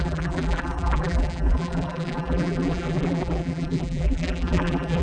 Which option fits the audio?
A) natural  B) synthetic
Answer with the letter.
B